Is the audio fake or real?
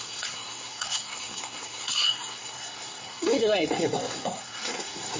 fake